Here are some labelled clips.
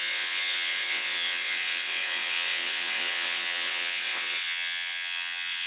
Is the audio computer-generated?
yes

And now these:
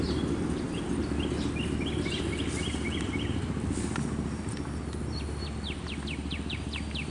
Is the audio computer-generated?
no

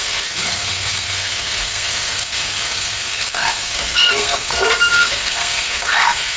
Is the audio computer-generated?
yes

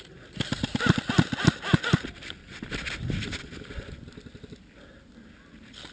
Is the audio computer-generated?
no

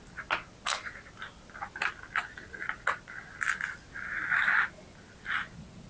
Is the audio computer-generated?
no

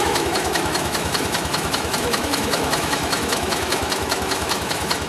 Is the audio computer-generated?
yes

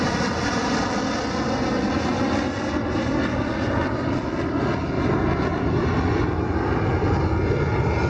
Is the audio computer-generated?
no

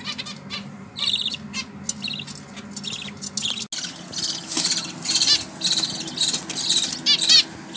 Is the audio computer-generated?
no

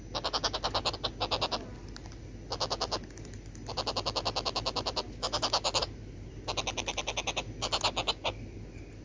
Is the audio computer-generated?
no